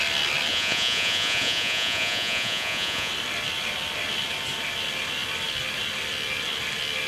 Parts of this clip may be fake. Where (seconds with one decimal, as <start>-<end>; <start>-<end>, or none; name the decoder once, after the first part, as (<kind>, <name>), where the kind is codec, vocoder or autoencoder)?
0.5-3.1 (vocoder, Vocos)